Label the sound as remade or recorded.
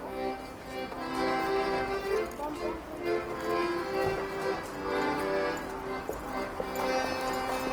recorded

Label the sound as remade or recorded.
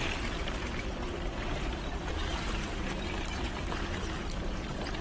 remade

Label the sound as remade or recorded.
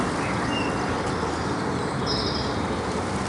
recorded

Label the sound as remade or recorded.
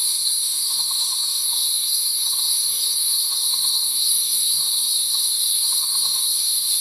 remade